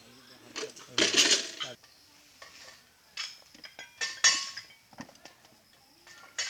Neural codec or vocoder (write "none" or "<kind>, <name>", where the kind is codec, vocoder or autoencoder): none